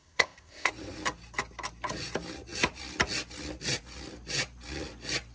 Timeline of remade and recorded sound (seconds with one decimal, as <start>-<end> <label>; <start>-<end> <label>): 0.0-0.7 remade; 0.7-5.3 recorded

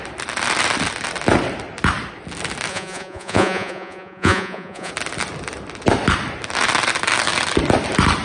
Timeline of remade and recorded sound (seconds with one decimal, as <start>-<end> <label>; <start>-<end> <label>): 0.0-2.7 recorded; 2.7-4.9 remade; 4.9-8.2 recorded

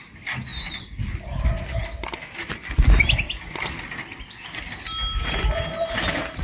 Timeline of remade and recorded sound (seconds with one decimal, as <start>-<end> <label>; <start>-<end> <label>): 0.0-6.4 recorded

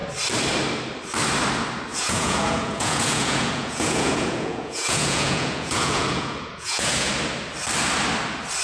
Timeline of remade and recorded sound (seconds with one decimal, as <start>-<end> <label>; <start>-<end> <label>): 0.0-1.9 recorded; 1.9-7.1 remade; 7.1-8.6 recorded

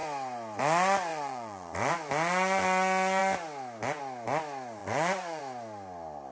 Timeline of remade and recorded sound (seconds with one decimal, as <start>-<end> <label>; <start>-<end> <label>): 0.0-1.1 recorded; 1.1-1.9 remade; 1.9-4.8 recorded; 4.8-5.4 remade; 5.4-6.3 recorded

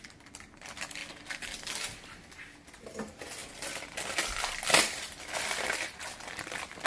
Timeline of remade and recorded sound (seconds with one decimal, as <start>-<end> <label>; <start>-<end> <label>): 0.0-3.4 recorded; 3.4-6.9 remade

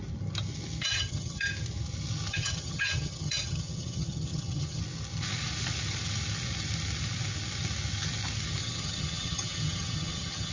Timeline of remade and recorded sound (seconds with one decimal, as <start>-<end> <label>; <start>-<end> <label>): 0.0-0.9 recorded; 0.9-1.5 remade; 1.5-2.3 recorded; 2.3-4.8 remade; 4.8-8.6 recorded; 8.6-10.5 remade

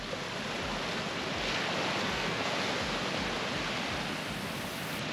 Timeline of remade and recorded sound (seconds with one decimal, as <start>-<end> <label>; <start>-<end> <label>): 0.0-2.0 recorded; 2.0-2.5 remade; 2.5-5.1 recorded